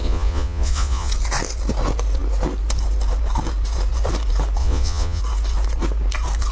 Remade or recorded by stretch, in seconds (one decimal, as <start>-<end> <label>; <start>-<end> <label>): 0.0-1.1 remade; 1.1-4.6 recorded; 4.6-5.2 remade; 5.2-6.5 recorded